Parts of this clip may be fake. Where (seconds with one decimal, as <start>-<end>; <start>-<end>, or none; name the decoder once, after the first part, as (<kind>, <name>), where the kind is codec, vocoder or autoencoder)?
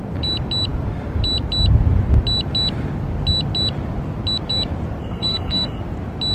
5.0-5.8 (codec, SNAC)